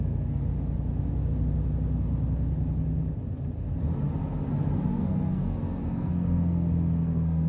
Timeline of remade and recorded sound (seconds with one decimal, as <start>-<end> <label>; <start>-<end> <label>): 0.0-0.4 remade; 0.4-4.9 recorded; 4.9-7.5 remade

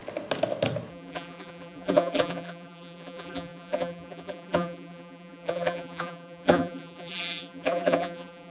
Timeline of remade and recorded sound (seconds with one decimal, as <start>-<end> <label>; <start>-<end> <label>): 0.0-0.9 recorded; 0.9-8.5 remade